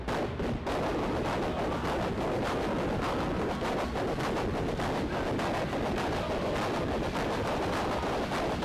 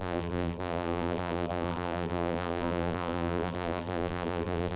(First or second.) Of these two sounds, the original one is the first